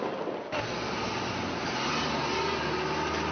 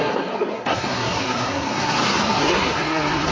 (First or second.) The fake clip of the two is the second